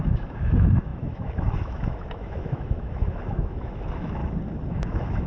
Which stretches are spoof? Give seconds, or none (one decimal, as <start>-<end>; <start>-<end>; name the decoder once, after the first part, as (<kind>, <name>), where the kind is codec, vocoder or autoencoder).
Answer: 0.0-4.2 (autoencoder, DAC-VAE); 4.7-5.3